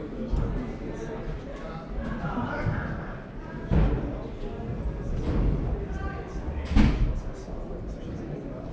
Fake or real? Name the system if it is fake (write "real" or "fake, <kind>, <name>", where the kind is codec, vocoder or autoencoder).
real